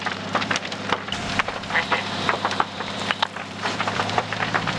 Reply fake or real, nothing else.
fake